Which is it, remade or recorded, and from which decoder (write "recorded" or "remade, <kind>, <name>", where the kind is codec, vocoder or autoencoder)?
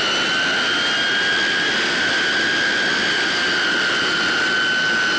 recorded